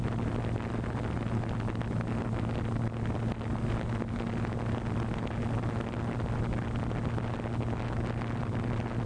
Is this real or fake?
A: real